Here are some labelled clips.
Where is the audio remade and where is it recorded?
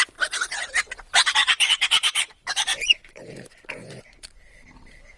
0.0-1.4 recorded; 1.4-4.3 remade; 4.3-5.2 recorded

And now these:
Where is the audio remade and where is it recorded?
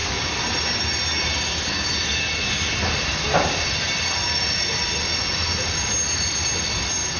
0.0-7.2 recorded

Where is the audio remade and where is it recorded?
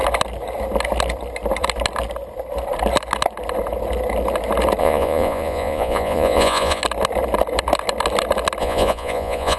0.0-4.8 recorded; 4.8-6.8 remade; 6.8-8.6 recorded; 8.6-9.6 remade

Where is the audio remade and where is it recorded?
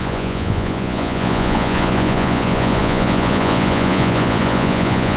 0.0-5.2 remade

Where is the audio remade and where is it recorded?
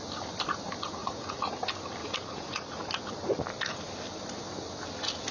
0.0-1.0 recorded; 1.0-1.6 remade; 1.6-2.0 recorded; 2.0-2.8 remade; 2.8-5.3 recorded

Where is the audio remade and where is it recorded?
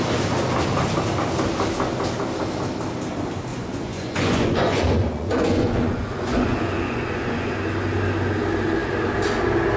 0.0-3.5 recorded; 3.5-7.5 remade; 7.5-9.8 recorded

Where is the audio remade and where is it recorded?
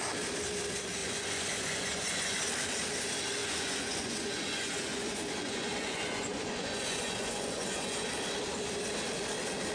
0.0-1.0 recorded; 1.0-2.4 remade; 2.4-3.4 recorded; 3.4-8.1 remade; 8.1-9.7 recorded